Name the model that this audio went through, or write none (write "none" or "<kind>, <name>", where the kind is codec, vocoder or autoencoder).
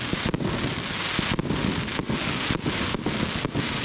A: none